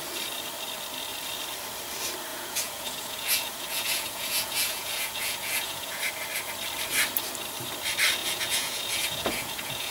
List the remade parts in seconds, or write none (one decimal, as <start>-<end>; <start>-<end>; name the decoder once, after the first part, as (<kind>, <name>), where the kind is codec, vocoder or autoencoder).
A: 2.3-6.0 (vocoder, Vocos); 8.2-9.9